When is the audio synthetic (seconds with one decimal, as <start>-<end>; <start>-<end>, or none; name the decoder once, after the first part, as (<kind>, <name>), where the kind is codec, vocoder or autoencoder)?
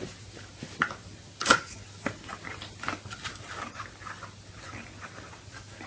none